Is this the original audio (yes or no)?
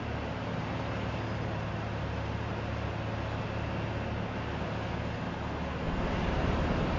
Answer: yes